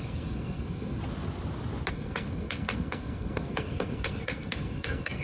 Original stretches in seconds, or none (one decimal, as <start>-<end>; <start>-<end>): 1.0-1.9